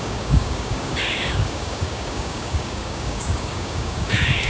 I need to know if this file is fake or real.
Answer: fake